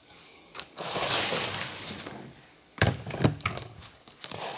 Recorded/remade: remade